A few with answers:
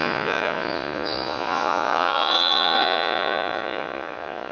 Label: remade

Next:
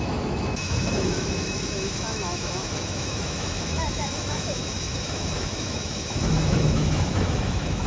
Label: remade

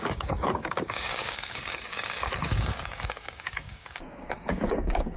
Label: remade